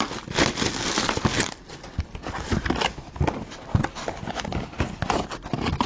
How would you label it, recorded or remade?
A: recorded